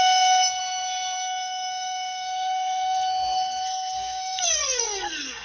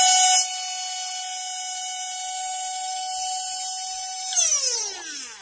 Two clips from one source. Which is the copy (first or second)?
first